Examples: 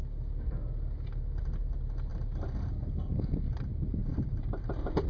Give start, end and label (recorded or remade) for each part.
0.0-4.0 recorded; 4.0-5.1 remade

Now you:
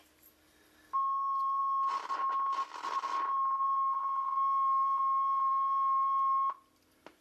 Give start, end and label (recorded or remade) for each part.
0.0-7.2 recorded

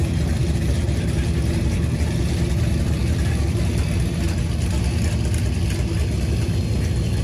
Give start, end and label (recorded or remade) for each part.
0.0-7.2 recorded

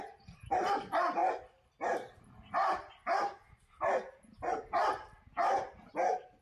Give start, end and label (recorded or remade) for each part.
0.0-1.2 remade; 1.2-2.2 recorded; 2.2-3.0 remade; 3.0-5.6 recorded; 5.6-6.4 remade